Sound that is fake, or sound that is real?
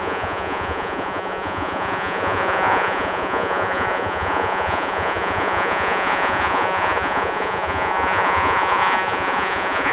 fake